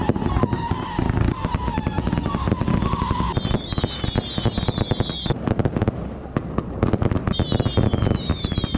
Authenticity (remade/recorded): recorded